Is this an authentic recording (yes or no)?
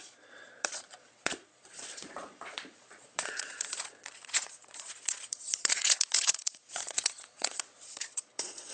no